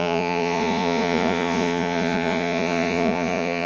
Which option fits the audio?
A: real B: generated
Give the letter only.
B